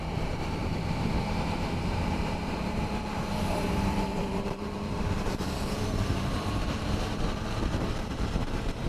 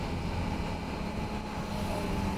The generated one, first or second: first